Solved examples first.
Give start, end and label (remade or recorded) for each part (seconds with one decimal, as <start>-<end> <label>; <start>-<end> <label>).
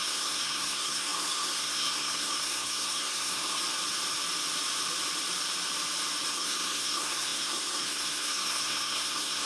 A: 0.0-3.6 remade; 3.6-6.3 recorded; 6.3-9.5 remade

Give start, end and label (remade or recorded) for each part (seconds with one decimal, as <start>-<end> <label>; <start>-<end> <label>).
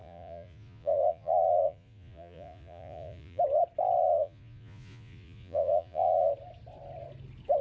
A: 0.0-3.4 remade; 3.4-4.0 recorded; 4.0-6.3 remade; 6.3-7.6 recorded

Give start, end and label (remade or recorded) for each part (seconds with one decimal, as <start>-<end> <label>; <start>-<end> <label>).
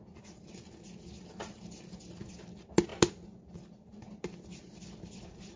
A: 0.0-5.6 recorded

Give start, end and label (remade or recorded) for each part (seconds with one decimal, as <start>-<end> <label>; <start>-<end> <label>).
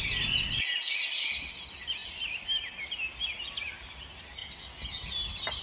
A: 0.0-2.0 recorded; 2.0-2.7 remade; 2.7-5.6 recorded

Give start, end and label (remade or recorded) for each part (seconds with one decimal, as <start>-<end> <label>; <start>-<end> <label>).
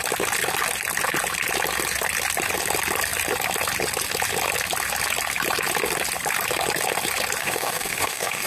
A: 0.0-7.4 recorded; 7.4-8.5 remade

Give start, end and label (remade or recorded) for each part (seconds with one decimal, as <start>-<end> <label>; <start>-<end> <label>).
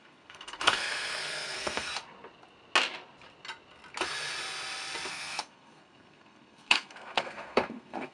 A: 0.0-1.9 remade; 1.9-5.1 recorded; 5.1-8.1 remade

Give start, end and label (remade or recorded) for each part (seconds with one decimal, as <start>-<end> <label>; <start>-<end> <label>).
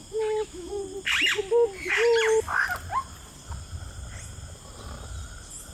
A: 0.0-0.8 remade; 0.8-5.7 recorded